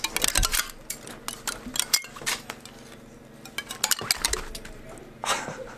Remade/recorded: recorded